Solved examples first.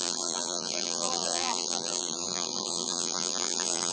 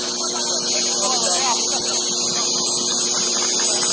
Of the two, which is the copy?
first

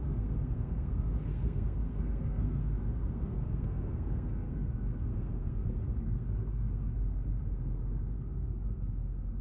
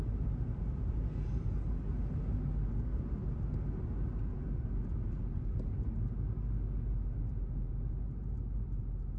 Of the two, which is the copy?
first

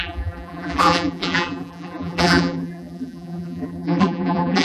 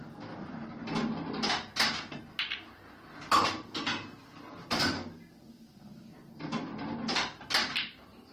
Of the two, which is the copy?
first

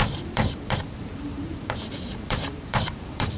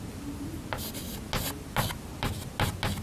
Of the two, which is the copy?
first